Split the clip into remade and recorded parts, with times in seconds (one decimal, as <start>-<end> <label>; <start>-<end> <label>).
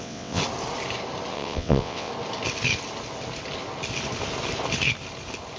0.0-0.4 remade; 0.4-1.3 recorded; 1.3-2.1 remade; 2.1-5.6 recorded